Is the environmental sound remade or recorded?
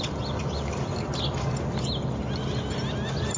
recorded